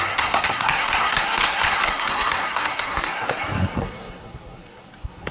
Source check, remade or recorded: remade